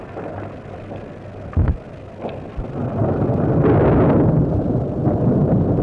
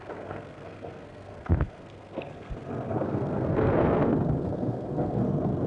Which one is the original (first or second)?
first